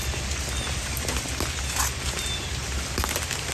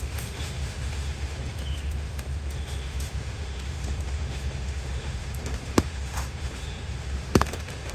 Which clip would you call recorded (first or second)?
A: first